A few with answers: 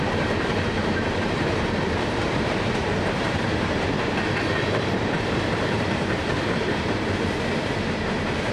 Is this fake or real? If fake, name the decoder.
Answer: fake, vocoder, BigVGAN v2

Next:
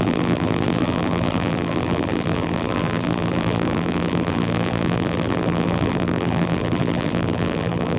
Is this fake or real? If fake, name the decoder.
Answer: fake, vocoder, BigVGAN v2